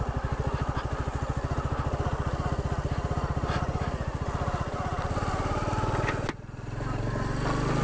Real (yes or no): yes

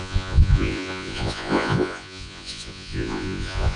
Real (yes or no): no